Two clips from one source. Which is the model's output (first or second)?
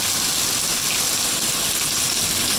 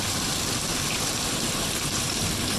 second